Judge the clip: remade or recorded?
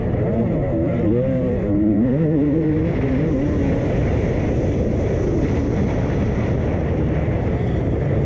remade